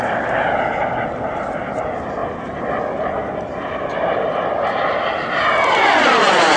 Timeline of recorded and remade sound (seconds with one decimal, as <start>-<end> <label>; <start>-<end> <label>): 0.0-6.6 recorded